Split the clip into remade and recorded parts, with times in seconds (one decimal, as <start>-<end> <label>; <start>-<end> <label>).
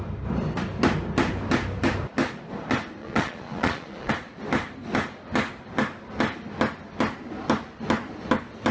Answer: 0.0-3.0 recorded; 3.0-4.1 remade; 4.1-8.7 recorded